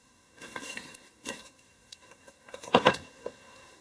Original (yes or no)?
no